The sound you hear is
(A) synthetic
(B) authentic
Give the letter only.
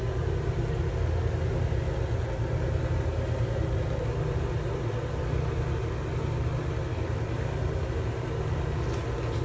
B